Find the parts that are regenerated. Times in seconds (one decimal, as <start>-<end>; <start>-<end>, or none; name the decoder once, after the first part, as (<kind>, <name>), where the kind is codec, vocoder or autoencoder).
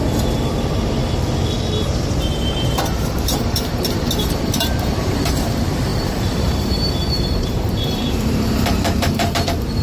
0.0-1.0 (vocoder, BigVGAN v2); 1.8-9.8